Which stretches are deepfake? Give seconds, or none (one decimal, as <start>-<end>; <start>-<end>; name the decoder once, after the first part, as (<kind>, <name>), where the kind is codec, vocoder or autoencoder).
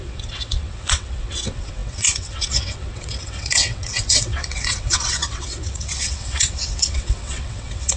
0.0-8.0 (vocoder, WaveNeXt)